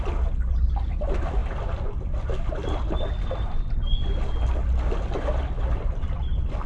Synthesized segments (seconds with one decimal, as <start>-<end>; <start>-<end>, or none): none